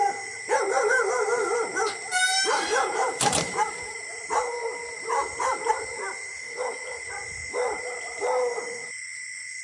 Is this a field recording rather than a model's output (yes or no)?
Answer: no